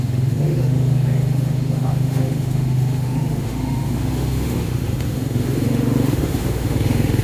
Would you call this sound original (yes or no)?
no